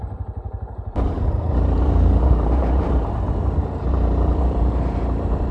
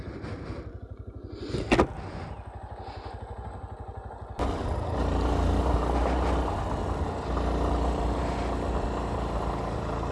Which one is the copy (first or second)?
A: first